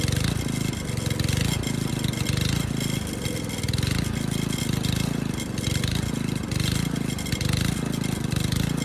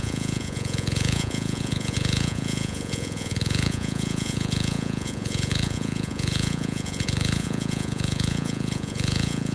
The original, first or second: first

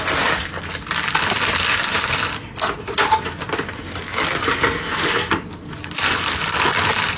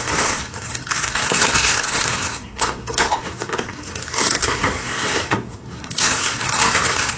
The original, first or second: first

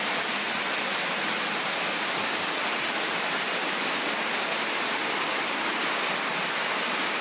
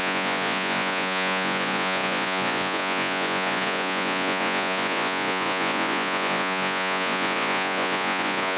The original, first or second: first